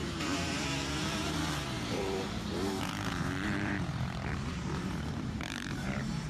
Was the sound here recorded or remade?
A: remade